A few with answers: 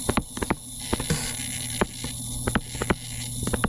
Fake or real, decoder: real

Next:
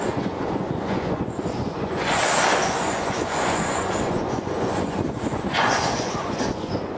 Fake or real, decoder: fake, vocoder, Vocos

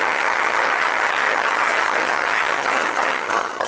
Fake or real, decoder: fake, vocoder, HiFi-GAN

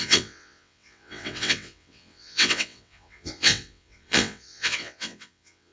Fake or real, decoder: fake, vocoder, WaveNeXt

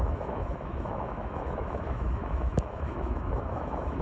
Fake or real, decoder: fake, autoencoder, DAC-VAE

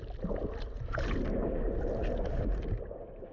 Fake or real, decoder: real